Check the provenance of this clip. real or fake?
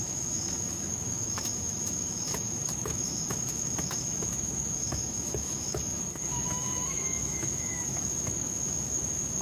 fake